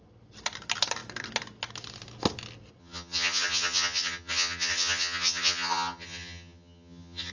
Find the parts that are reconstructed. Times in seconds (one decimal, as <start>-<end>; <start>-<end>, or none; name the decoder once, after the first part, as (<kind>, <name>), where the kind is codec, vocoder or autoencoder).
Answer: 2.8-7.3 (vocoder, HiFi-GAN)